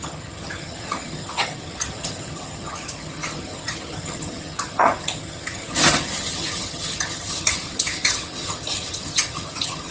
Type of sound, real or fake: fake